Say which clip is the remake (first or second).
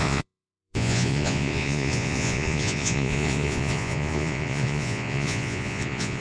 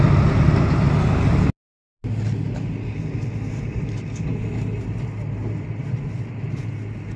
first